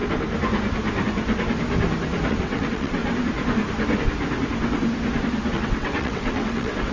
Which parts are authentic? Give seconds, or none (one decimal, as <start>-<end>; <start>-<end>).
0.0-2.3; 3.0-5.5